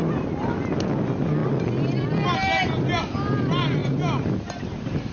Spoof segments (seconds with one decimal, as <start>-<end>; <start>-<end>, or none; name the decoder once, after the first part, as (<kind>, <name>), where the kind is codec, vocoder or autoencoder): none